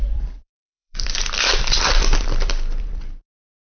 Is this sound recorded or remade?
remade